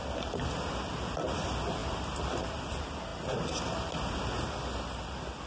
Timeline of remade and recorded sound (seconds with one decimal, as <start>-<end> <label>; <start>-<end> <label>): 0.0-5.5 recorded